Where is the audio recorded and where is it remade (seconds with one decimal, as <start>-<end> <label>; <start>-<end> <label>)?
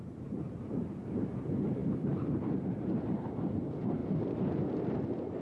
0.0-4.0 remade; 4.0-5.4 recorded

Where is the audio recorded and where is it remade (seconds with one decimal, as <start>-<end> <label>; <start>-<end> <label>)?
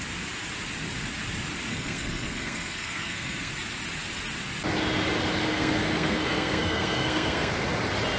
0.0-1.7 recorded; 1.7-3.5 remade; 3.5-5.4 recorded; 5.4-7.5 remade; 7.5-8.2 recorded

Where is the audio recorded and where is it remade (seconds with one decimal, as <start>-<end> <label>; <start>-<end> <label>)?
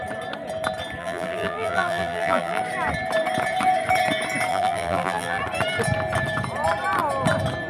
0.0-1.0 recorded; 1.0-2.6 remade; 2.6-4.5 recorded; 4.5-5.4 remade; 5.4-7.7 recorded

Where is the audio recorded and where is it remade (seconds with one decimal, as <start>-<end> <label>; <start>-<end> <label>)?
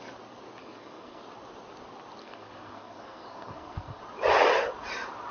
0.0-0.6 recorded; 0.6-1.2 remade; 1.2-2.2 recorded; 2.2-4.0 remade; 4.0-5.3 recorded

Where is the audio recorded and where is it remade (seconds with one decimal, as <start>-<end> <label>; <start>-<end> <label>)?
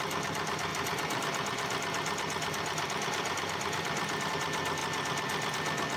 0.0-0.7 recorded; 0.7-4.3 remade; 4.3-6.0 recorded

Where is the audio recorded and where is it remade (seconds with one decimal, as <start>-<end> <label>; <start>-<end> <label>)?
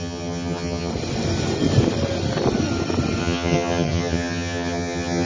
0.0-0.9 remade; 0.9-3.2 recorded; 3.2-5.3 remade